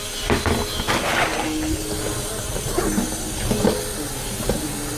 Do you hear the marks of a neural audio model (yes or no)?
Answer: no